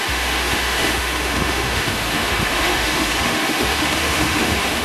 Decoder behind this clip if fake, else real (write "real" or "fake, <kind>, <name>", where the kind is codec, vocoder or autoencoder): fake, autoencoder, DAC-VAE